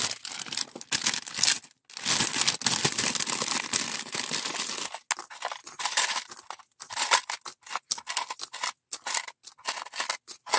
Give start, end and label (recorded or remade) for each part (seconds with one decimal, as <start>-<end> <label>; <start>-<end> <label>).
0.0-10.6 recorded